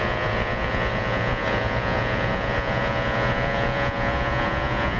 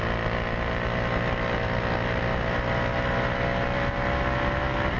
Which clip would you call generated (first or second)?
first